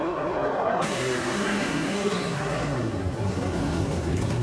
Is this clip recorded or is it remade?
remade